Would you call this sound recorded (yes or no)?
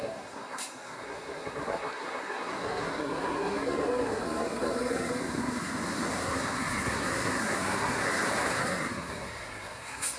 no